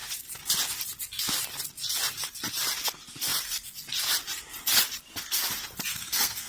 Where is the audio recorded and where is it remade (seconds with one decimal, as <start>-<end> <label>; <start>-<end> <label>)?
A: 0.0-5.9 recorded; 5.9-6.5 remade